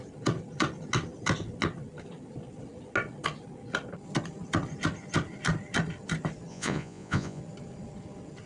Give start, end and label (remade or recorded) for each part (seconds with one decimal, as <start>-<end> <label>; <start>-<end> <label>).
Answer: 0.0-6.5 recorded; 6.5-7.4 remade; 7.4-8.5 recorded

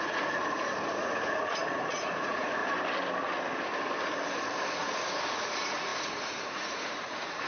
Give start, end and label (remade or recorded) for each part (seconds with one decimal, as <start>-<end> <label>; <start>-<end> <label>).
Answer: 0.0-2.6 remade; 2.6-4.6 recorded; 4.6-7.5 remade

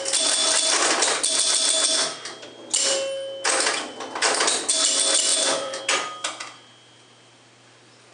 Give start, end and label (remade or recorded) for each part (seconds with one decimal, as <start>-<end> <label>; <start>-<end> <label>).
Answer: 0.0-5.3 recorded; 5.3-5.8 remade; 5.8-8.1 recorded